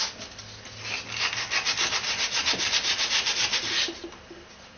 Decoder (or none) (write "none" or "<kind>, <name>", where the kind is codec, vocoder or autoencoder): none